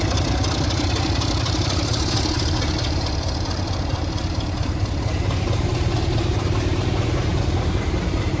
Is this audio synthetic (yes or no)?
yes